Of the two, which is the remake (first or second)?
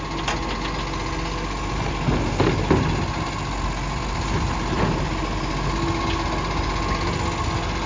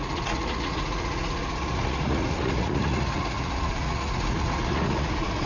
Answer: second